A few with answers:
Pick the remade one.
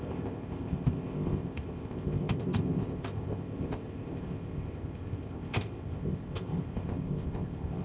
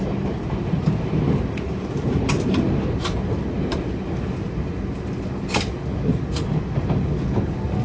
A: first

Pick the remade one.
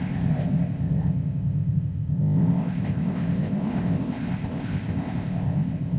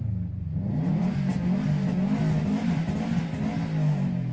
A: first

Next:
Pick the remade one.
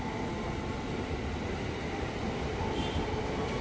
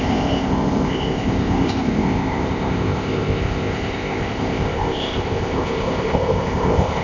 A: second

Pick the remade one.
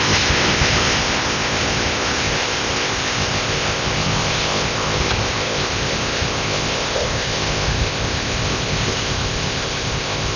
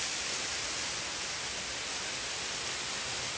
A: first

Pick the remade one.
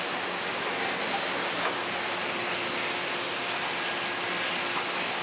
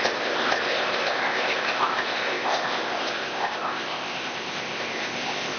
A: second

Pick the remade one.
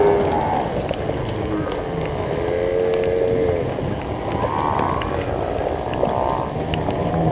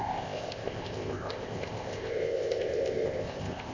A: second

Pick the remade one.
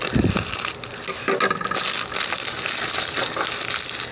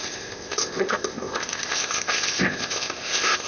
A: second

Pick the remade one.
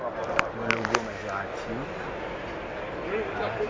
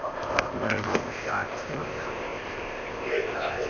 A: second